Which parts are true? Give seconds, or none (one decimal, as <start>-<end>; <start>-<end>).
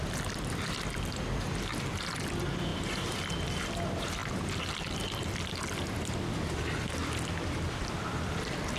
4.2-7.3